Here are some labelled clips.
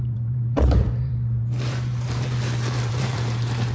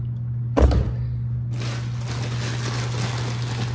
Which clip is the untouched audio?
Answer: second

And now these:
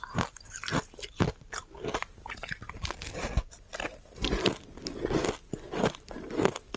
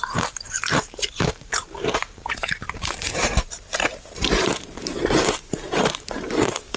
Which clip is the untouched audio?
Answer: first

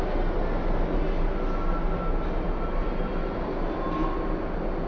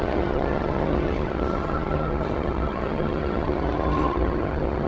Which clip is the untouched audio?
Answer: first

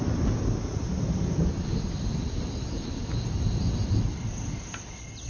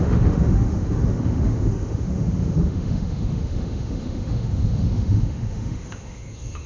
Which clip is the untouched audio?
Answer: first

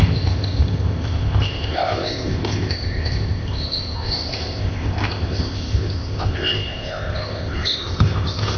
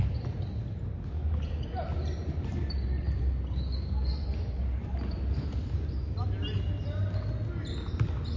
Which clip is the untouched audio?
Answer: second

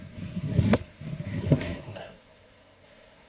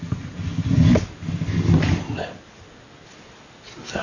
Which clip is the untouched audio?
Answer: second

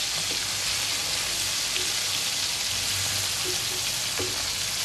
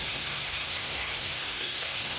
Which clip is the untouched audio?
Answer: first